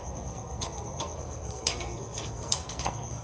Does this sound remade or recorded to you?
remade